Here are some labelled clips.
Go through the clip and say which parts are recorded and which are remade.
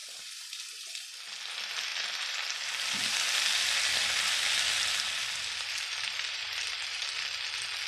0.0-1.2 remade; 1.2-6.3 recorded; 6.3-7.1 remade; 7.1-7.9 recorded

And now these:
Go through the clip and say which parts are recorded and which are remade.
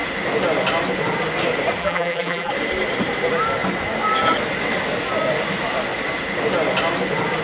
0.0-1.8 recorded; 1.8-2.5 remade; 2.5-7.4 recorded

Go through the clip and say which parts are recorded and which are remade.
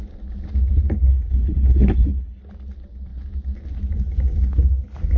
0.0-1.1 recorded; 1.1-2.4 remade; 2.4-5.2 recorded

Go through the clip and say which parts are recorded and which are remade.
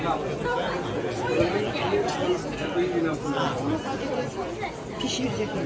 0.0-5.7 recorded